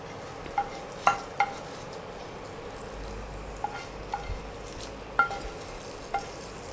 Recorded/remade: recorded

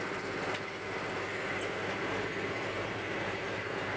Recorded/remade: recorded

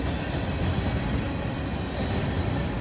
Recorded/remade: recorded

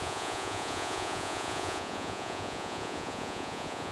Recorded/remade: remade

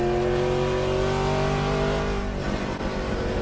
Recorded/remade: recorded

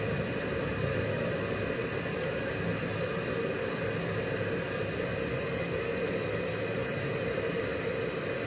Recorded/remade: recorded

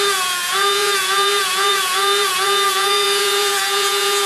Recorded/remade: remade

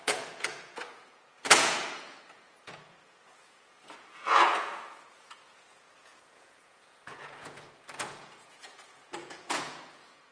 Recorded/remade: remade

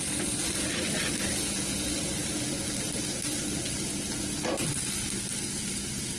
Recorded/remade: recorded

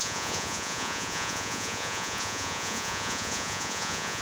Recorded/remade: remade